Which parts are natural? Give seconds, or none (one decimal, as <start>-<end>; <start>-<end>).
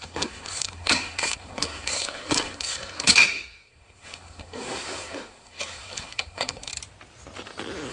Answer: 6.7-7.9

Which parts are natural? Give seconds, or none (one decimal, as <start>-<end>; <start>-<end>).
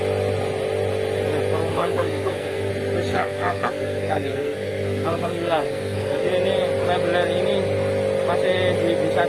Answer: 0.0-1.7; 2.7-3.1; 6.3-9.3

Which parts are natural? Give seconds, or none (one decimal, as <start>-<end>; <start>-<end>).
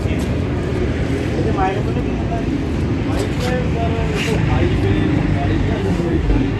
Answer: 0.0-5.8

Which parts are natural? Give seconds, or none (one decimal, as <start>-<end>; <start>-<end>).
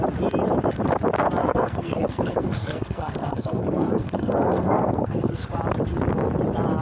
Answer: 0.0-1.4; 5.5-6.8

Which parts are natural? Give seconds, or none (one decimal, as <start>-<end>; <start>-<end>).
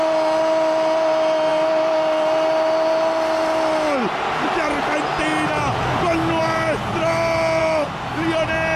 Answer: 0.0-8.8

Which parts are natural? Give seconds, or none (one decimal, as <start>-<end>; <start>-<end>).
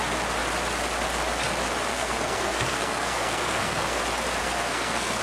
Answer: 0.0-1.9; 4.0-4.4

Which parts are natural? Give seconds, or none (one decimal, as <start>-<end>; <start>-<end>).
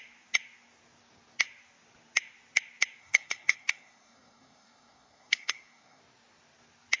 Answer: 0.0-3.0; 6.0-7.0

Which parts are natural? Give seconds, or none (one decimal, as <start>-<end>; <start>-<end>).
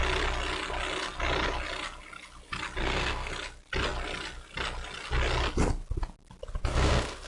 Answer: 0.0-2.8; 3.3-6.7